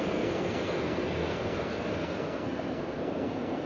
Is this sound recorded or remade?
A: remade